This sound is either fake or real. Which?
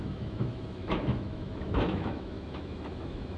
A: fake